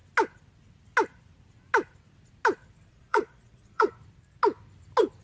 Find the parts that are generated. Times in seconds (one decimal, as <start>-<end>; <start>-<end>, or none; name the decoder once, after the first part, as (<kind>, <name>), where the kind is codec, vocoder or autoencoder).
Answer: 2.9-3.9 (vocoder, Vocos)